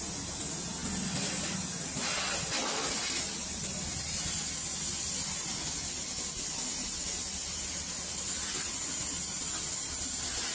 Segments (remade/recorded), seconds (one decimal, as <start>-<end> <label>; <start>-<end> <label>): 0.0-10.5 recorded